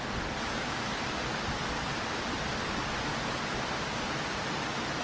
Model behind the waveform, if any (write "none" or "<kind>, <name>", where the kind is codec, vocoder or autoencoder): vocoder, BigVGAN v2